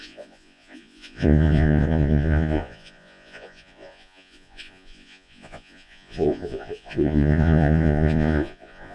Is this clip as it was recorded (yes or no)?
no